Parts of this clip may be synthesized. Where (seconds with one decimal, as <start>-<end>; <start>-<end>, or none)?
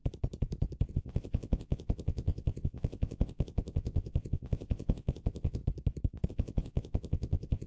0.9-5.6; 6.3-7.7